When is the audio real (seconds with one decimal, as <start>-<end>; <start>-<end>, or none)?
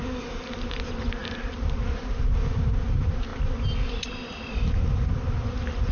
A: 0.0-5.9